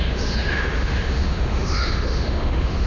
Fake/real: fake